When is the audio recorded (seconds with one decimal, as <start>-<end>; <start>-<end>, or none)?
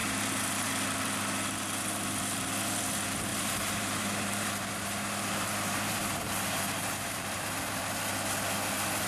0.7-3.3; 7.6-9.1